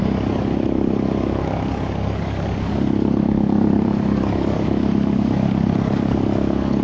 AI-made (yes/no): yes